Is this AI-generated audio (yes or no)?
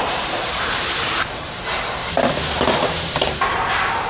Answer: yes